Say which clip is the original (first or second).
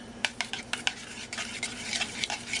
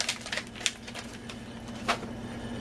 second